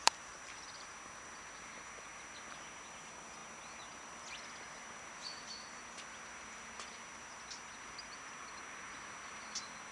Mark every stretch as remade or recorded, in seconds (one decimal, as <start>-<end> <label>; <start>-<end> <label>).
0.0-9.9 recorded